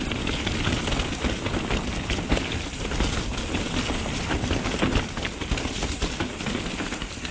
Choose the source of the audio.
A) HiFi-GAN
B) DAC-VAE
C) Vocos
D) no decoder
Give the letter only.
D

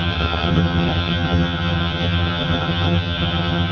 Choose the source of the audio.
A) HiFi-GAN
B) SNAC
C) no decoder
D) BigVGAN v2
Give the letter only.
A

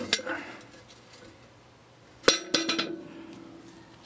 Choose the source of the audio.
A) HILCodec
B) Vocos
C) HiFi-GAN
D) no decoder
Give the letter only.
D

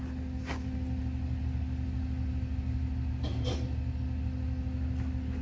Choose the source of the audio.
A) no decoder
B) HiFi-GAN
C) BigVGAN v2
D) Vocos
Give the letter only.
A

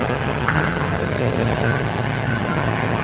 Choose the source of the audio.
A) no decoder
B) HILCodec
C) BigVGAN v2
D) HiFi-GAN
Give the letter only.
D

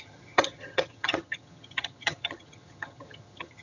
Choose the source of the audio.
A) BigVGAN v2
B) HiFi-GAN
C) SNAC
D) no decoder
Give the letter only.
B